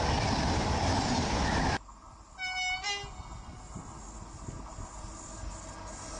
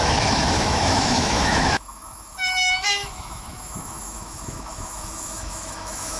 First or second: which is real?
first